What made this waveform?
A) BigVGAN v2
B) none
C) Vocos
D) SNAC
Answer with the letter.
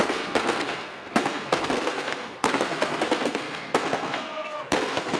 D